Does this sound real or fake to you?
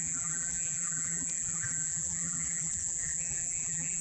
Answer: fake